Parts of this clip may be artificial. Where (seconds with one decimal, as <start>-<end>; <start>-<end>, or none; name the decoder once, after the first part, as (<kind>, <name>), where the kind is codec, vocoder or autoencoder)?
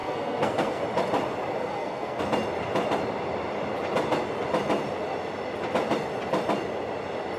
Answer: 0.0-0.8 (codec, SNAC); 1.6-2.2